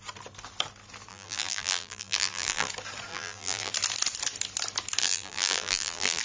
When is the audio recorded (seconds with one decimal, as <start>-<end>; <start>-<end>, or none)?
0.0-1.1; 2.7-3.1; 3.7-5.0